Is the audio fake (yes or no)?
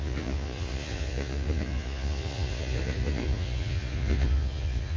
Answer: yes